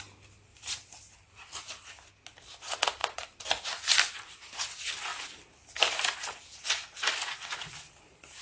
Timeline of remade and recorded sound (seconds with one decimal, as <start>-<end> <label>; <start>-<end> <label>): 0.0-0.5 recorded; 0.5-2.1 remade; 2.1-3.0 recorded; 3.0-4.6 remade; 4.6-5.1 recorded; 5.1-6.7 remade; 6.7-8.4 recorded